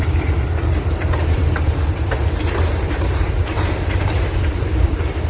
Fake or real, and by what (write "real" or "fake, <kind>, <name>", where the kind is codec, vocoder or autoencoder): fake, vocoder, BigVGAN v2